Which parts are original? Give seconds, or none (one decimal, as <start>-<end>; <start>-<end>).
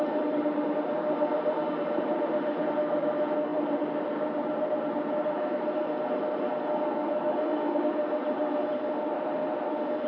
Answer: none